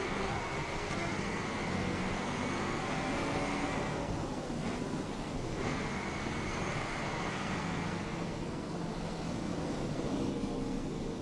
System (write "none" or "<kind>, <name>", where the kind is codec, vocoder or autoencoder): codec, SNAC